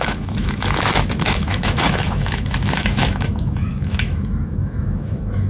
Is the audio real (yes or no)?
no